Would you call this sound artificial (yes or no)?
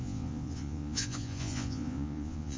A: yes